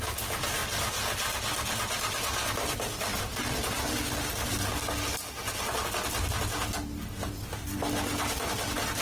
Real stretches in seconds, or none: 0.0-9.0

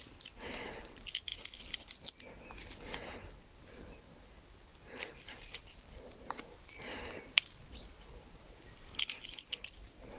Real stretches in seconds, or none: 0.0-4.7; 8.6-10.2

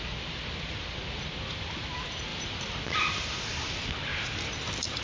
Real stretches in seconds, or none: 1.0-2.3; 3.0-4.1

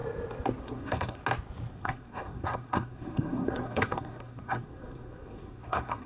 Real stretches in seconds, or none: 0.0-0.6; 1.2-1.7

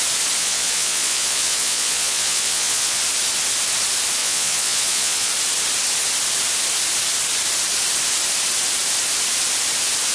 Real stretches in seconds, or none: 0.0-0.4; 3.0-4.2; 5.3-10.1